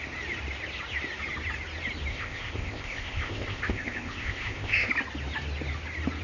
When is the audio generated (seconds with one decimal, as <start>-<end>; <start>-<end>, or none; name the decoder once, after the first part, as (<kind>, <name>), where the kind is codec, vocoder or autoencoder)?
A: 2.1-4.9 (codec, ZipCodec)